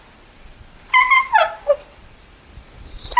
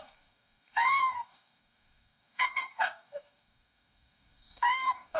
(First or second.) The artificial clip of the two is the second